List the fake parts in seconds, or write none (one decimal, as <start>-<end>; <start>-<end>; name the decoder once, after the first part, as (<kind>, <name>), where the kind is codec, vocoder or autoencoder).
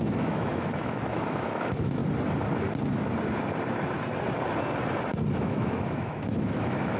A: 0.0-2.0 (autoencoder, DAC-VAE); 5.3-7.0